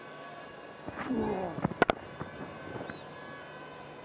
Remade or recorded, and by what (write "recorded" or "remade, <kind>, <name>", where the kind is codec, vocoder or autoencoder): recorded